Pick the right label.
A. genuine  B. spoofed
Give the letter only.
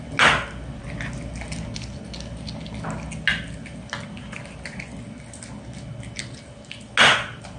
A